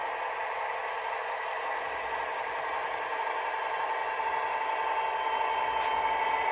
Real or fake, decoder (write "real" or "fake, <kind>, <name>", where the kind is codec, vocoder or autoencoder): real